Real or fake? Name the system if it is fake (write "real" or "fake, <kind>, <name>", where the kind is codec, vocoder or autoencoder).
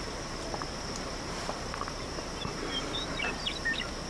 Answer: fake, vocoder, BigVGAN v2